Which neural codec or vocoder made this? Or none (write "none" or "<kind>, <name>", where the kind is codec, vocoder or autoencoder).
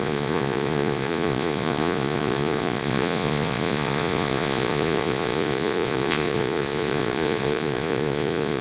vocoder, Vocos